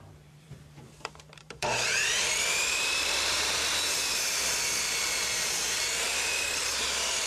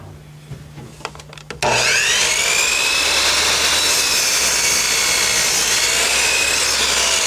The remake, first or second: first